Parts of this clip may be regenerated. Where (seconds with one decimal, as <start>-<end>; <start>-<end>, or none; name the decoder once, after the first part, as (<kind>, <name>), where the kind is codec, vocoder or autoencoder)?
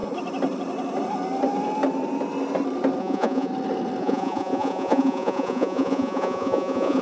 3.0-3.5 (vocoder, Vocos); 4.0-7.0